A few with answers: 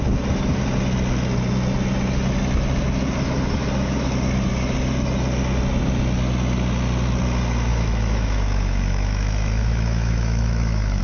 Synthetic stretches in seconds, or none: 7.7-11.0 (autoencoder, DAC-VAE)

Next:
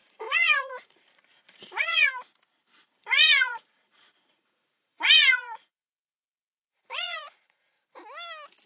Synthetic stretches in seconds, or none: 0.0-2.1 (vocoder, Vocos); 3.0-7.7

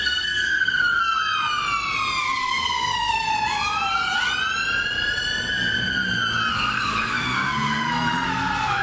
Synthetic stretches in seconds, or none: 0.0-1.0 (codec, SNAC); 2.2-3.3; 6.5-8.8

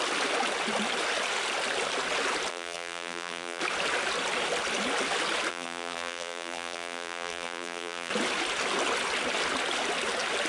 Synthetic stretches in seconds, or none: 2.5-3.6 (vocoder, BigVGAN v2); 5.5-8.1

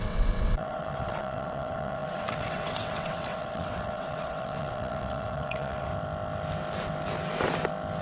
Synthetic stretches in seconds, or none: 0.0-5.9 (vocoder, WaveNeXt)

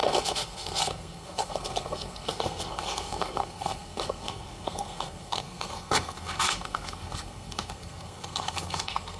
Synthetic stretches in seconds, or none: 0.0-9.2 (codec, SNAC)

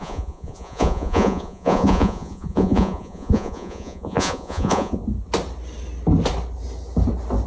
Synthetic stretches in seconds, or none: 0.0-5.0 (vocoder, Vocos)

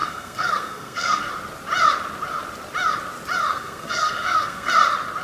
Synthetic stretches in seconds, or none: 0.0-1.3 (codec, SNAC); 3.5-4.7